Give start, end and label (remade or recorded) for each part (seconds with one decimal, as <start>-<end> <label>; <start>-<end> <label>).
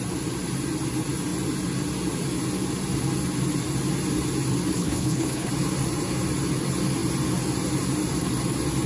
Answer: 0.0-4.8 recorded; 4.8-5.5 remade; 5.5-8.9 recorded